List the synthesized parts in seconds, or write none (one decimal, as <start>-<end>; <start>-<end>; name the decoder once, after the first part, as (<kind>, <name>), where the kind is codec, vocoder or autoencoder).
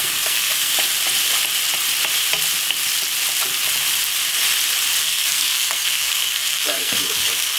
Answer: 0.0-0.7 (codec, SNAC); 5.0-7.6